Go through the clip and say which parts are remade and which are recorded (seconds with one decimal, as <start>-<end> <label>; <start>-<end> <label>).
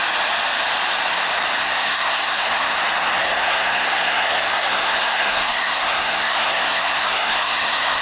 0.0-1.6 recorded; 1.6-2.7 remade; 2.7-3.2 recorded; 3.2-8.0 remade